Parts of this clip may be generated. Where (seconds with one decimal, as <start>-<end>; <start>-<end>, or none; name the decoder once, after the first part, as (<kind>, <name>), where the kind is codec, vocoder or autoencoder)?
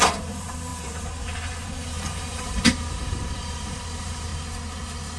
0.0-4.3 (vocoder, BigVGAN v2)